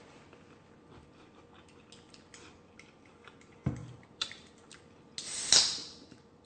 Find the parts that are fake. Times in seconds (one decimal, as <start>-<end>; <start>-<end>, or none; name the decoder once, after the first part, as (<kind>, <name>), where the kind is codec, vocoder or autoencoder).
3.8-4.5 (vocoder, BigVGAN v2); 5.8-6.5